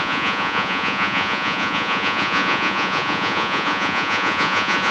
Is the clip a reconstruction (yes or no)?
yes